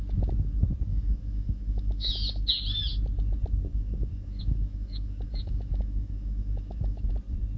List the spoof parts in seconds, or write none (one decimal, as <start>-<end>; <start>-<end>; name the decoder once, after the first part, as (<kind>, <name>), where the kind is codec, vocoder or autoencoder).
0.9-2.1 (autoencoder, DAC-VAE); 3.7-7.1